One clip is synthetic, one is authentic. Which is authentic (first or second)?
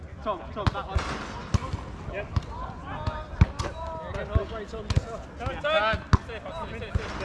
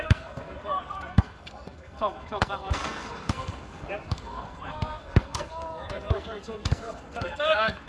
first